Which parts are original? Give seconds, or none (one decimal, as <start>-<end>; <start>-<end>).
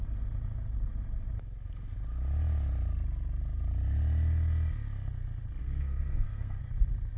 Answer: 0.0-5.6; 6.6-7.2